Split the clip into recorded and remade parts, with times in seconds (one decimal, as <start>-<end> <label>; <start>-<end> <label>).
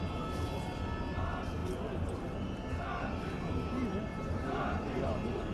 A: 0.0-4.1 recorded; 4.1-4.9 remade; 4.9-5.5 recorded